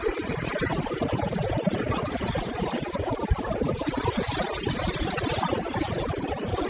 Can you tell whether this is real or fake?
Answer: fake